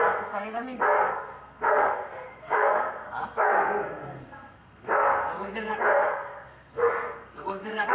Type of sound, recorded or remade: remade